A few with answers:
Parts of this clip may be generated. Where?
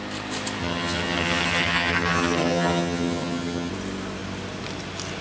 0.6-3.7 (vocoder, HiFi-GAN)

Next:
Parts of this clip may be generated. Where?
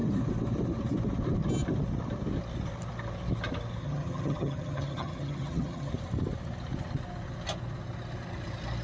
3.8-5.9 (vocoder, HiFi-GAN)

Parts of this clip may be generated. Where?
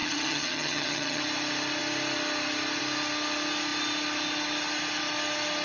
0.0-1.2 (vocoder, HiFi-GAN)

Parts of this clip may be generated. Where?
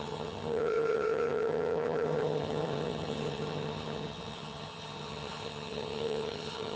0.0-6.8 (vocoder, HiFi-GAN)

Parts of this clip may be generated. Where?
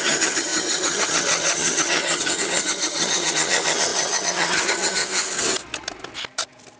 0.0-5.0 (vocoder, HiFi-GAN)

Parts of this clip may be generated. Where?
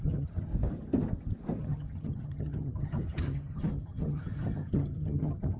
0.0-0.5 (vocoder, HiFi-GAN); 1.6-5.6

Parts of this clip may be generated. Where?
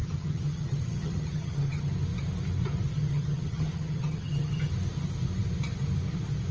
0.0-1.9 (vocoder, HiFi-GAN); 2.9-4.7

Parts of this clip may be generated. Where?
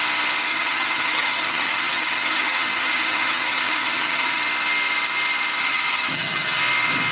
0.5-4.4 (vocoder, HiFi-GAN); 5.6-6.6